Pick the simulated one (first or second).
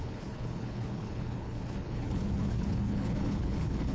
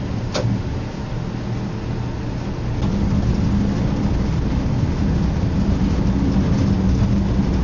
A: first